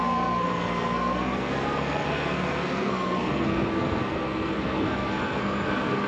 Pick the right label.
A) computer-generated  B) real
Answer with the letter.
A